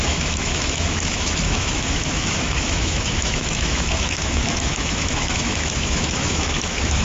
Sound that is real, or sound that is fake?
fake